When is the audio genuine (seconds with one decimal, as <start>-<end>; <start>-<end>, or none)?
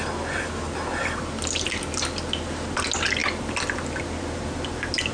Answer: 0.0-5.1